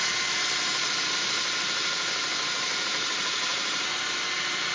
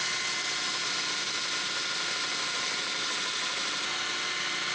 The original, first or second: second